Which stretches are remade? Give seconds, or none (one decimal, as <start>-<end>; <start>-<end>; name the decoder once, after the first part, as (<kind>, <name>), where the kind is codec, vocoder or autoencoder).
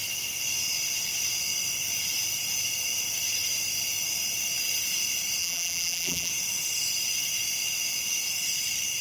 5.4-6.3 (vocoder, BigVGAN v2)